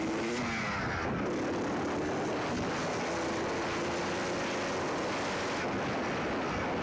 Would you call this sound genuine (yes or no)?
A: yes